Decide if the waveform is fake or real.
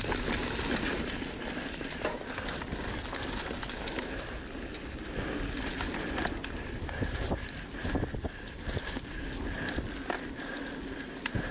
real